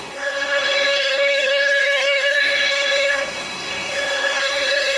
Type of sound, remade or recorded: remade